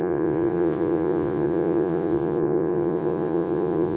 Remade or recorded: remade